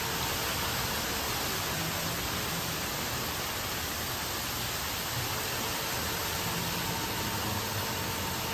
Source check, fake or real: real